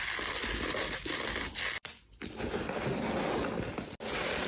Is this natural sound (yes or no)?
yes